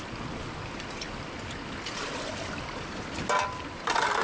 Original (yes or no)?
yes